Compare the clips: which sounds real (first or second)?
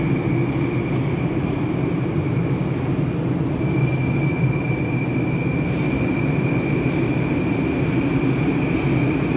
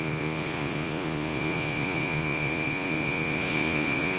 first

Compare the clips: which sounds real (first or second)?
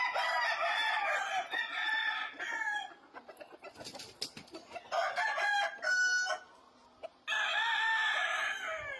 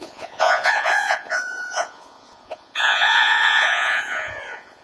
first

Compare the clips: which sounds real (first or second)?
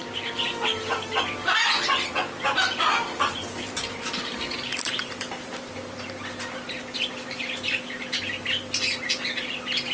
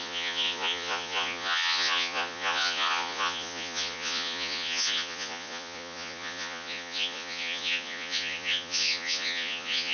first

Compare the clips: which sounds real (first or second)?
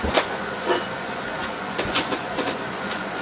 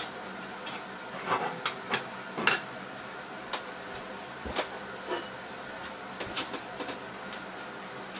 second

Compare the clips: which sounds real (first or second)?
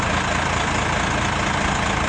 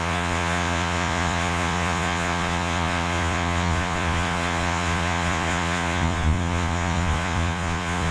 first